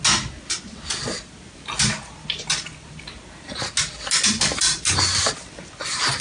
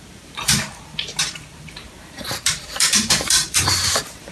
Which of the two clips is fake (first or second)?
second